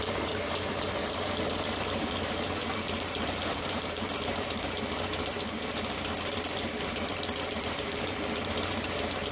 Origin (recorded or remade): remade